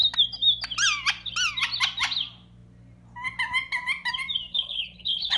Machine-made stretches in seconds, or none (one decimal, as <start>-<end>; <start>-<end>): 4.5-5.4